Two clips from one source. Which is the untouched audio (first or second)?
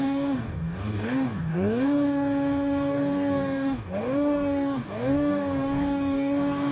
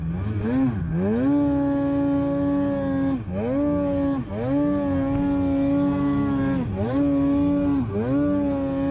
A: second